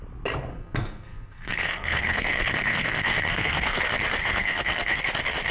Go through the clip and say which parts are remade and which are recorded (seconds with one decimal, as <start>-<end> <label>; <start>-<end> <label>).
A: 0.0-0.5 recorded; 0.5-3.8 remade; 3.8-4.2 recorded; 4.2-5.0 remade; 5.0-5.5 recorded